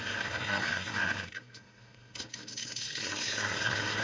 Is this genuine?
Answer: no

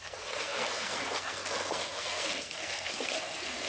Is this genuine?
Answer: no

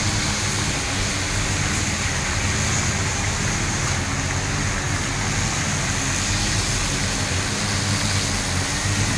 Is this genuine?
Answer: yes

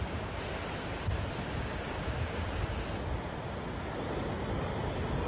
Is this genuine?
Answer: yes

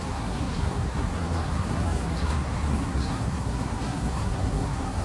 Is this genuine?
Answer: no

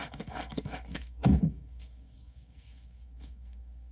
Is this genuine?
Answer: no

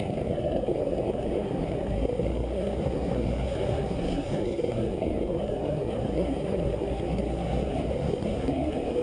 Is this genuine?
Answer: no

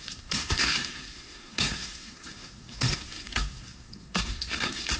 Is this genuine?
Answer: no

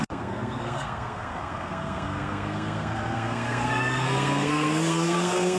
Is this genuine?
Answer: no